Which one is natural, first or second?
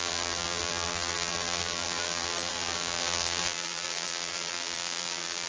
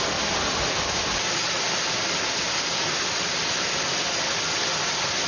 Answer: second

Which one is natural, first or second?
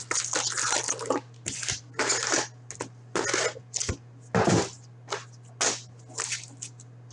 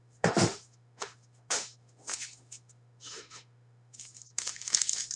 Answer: first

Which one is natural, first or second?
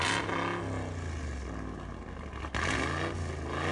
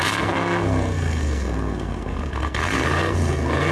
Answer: first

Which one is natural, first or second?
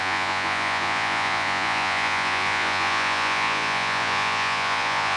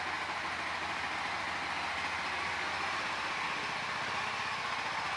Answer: second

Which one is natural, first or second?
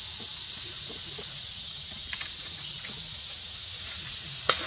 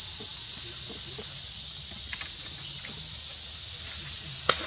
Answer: second